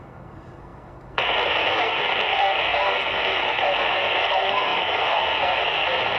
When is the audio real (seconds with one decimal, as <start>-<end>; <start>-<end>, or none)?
none